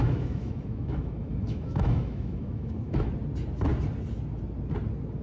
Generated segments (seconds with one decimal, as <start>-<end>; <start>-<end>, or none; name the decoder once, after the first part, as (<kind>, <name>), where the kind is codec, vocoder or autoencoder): 0.0-3.1 (autoencoder, DAC-VAE)